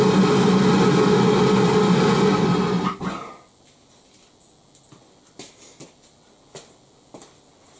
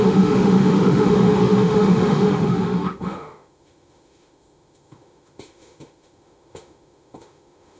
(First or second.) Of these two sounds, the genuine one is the first